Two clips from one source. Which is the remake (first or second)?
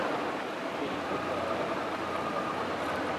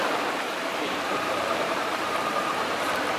second